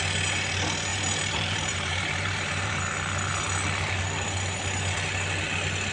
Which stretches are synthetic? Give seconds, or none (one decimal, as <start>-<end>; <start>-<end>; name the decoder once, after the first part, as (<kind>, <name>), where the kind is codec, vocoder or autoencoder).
0.9-2.8 (vocoder, BigVGAN v2)